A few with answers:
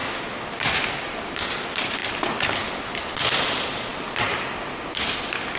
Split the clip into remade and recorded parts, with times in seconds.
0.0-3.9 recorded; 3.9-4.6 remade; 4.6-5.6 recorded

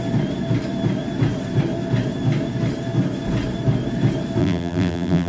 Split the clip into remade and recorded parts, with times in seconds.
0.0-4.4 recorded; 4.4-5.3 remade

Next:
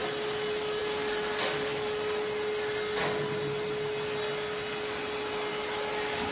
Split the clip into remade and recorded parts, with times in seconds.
0.0-6.3 recorded

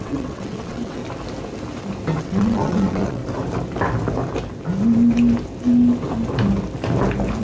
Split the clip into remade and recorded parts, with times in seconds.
0.0-1.0 remade; 1.0-2.2 recorded; 2.2-3.2 remade; 3.2-7.4 recorded

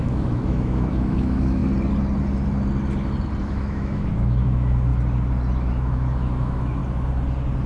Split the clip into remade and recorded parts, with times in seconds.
0.0-1.6 remade; 1.6-3.4 recorded; 3.4-4.9 remade; 4.9-5.7 recorded; 5.7-6.8 remade; 6.8-7.7 recorded